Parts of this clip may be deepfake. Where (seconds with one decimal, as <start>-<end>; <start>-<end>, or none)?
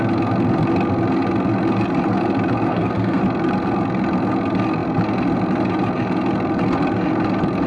2.7-3.2